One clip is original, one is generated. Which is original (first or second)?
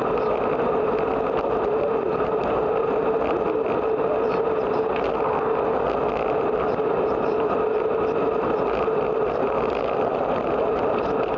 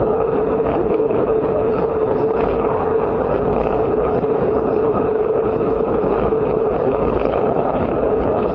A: first